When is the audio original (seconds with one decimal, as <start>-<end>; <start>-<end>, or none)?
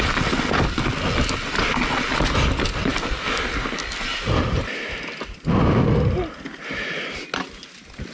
0.0-8.1